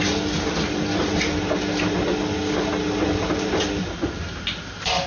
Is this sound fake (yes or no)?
no